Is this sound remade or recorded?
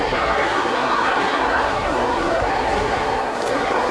remade